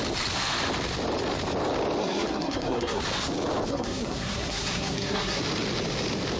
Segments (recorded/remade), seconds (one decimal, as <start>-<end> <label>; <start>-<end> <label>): 0.0-2.0 recorded; 2.0-3.0 remade; 3.0-3.7 recorded; 3.7-5.4 remade; 5.4-6.4 recorded